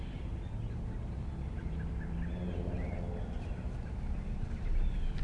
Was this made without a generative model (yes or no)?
yes